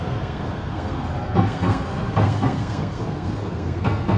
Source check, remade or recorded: remade